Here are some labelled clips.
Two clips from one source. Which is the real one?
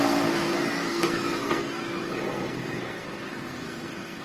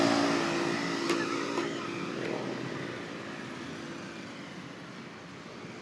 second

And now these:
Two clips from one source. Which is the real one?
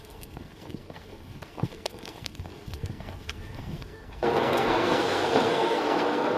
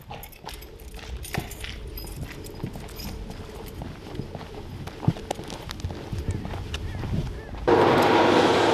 second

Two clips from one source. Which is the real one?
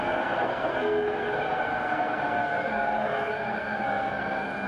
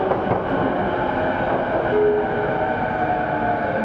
second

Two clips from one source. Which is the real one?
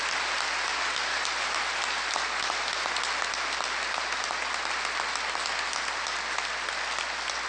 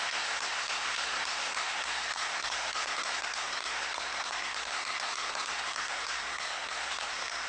first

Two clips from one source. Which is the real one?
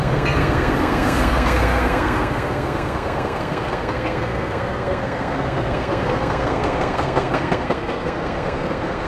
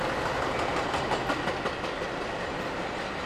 second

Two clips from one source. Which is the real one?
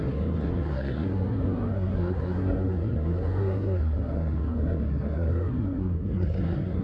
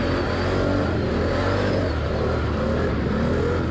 second